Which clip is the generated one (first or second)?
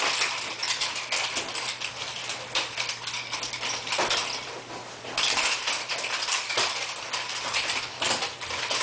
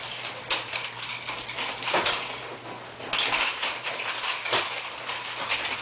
first